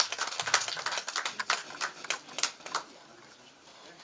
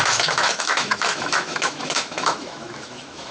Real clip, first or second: first